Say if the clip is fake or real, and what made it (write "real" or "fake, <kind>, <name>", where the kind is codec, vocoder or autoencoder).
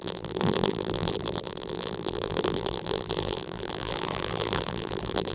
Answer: fake, vocoder, BigVGAN v2